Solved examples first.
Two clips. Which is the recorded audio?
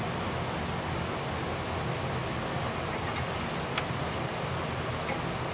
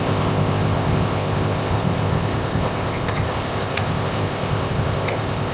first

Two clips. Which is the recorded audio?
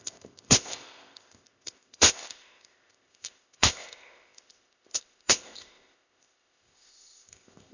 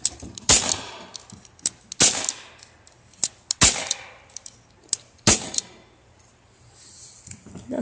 second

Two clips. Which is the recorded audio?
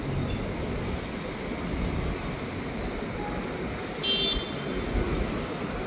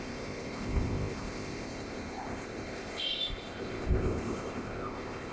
first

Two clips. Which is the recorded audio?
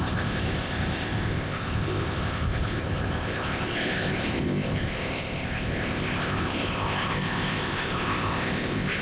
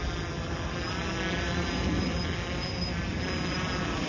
second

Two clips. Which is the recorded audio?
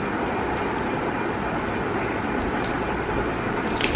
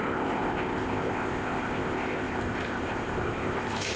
first